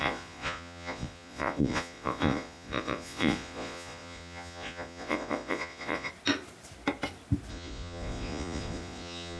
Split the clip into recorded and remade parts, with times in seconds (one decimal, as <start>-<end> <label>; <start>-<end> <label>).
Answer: 0.0-6.1 remade; 6.1-7.5 recorded; 7.5-9.4 remade